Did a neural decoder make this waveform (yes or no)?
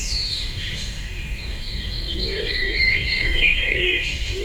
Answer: yes